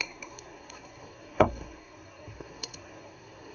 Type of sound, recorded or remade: remade